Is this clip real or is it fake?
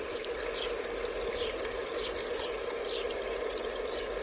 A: real